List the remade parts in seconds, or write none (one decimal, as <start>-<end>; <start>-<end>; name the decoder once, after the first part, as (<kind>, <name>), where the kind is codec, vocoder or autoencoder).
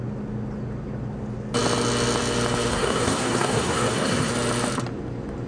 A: 2.7-4.3 (codec, SNAC)